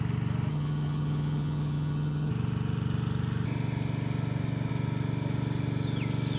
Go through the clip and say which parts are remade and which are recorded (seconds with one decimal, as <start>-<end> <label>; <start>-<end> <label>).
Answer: 0.0-0.5 recorded; 0.5-2.3 remade; 2.3-6.4 recorded